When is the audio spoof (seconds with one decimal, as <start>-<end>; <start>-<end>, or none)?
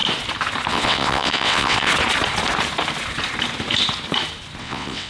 0.7-1.9; 4.6-5.1